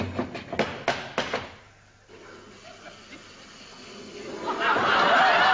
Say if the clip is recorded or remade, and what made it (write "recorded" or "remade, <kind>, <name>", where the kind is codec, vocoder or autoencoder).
recorded